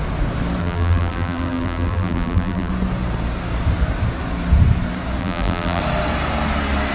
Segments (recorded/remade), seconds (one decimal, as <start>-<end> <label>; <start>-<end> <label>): 0.0-0.6 recorded; 0.6-2.7 remade; 2.7-5.2 recorded; 5.2-5.8 remade; 5.8-6.9 recorded